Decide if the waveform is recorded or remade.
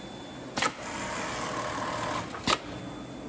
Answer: recorded